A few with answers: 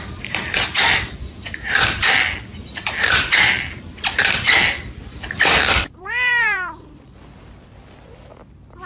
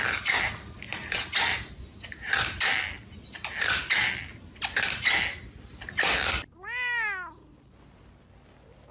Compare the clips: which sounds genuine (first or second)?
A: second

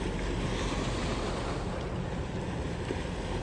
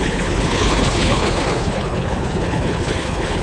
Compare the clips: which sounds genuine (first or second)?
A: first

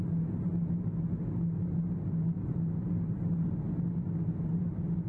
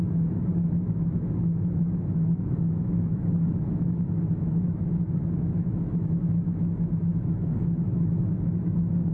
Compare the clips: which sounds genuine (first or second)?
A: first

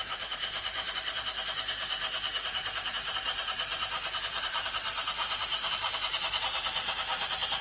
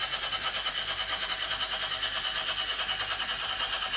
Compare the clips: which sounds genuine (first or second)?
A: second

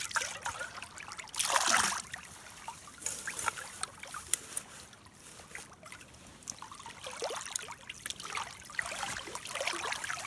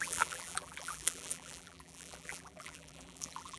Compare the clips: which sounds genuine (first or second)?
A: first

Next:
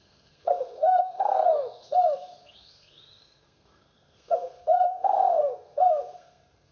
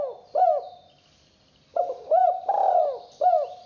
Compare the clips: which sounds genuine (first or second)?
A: second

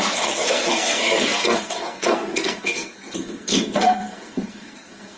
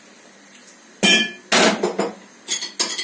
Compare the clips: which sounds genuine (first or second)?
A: second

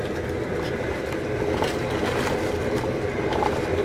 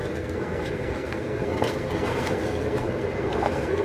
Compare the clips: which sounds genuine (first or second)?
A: first